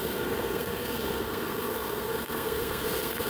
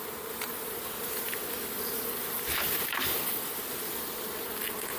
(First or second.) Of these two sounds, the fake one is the first